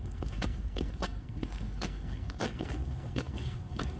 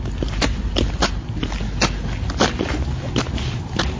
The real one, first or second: second